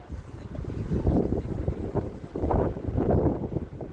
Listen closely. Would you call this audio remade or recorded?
recorded